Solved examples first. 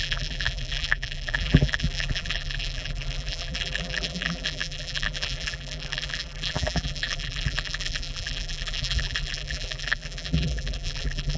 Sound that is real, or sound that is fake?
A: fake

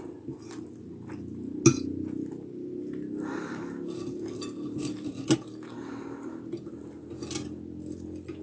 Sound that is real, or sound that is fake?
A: real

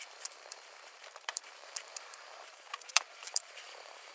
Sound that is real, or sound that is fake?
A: fake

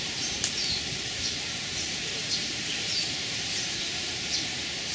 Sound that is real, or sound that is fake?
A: fake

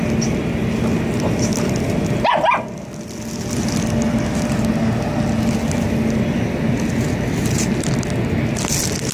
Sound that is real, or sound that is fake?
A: real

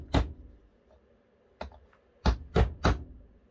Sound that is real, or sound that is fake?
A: real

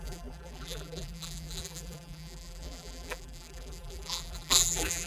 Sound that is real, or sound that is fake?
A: fake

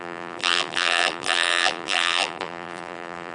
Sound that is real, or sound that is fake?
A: fake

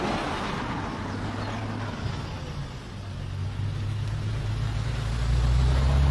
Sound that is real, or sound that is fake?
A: real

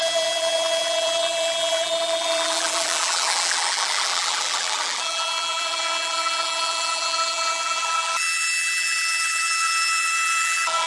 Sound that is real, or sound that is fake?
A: fake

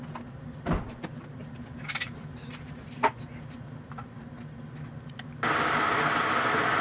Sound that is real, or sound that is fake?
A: real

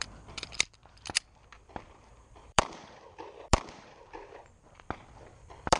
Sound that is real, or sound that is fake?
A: fake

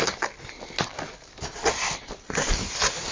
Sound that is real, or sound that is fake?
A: real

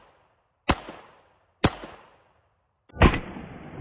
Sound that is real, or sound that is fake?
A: real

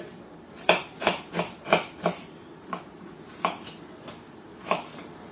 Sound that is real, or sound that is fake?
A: fake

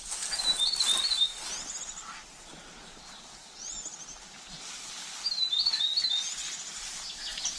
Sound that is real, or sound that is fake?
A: real